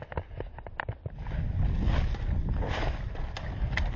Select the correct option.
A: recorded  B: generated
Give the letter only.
A